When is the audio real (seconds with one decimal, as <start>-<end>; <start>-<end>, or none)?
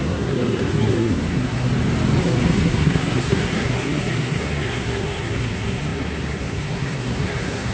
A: 1.7-2.2